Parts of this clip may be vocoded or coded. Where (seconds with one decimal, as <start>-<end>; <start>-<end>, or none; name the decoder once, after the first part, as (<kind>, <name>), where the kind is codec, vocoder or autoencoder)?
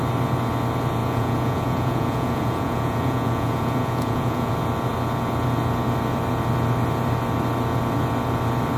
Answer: 1.0-4.5 (vocoder, Vocos)